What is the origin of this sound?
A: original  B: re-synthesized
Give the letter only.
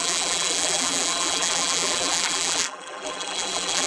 B